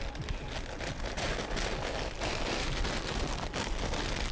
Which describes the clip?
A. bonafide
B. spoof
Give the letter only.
A